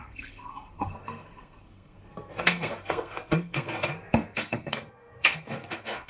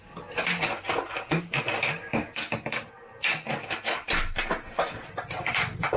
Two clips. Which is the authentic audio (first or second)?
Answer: second